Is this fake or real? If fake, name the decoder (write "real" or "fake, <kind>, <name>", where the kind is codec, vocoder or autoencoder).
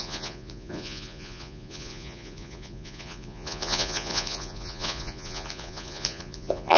fake, vocoder, Vocos